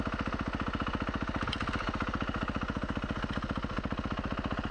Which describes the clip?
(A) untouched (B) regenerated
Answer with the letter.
A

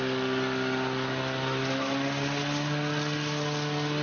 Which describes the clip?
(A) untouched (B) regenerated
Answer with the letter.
A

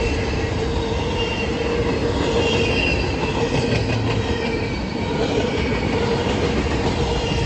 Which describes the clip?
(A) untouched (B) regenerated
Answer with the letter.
A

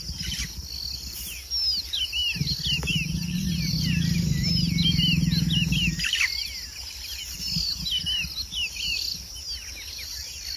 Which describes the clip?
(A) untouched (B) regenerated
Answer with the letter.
A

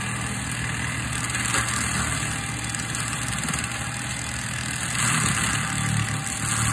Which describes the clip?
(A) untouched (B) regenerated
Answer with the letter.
A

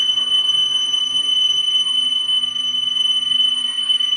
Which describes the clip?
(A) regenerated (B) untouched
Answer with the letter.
A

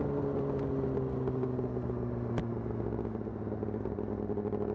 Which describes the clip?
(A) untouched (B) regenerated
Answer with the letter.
A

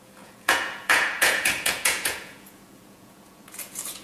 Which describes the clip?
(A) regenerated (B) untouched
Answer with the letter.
A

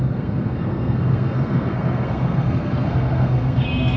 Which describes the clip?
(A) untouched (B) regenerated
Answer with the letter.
B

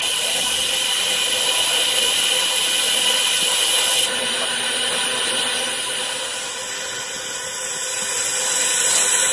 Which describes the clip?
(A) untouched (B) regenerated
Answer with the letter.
A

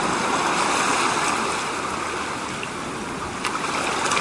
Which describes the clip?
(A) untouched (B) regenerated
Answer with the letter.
A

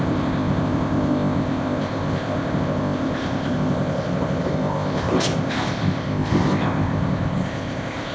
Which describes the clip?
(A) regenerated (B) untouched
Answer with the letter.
A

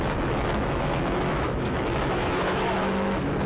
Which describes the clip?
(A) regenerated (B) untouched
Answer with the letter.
A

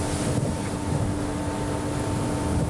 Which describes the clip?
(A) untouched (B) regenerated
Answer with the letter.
A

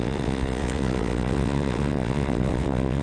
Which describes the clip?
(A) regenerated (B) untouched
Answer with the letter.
A